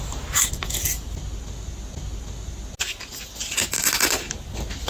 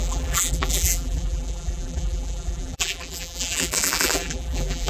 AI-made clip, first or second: second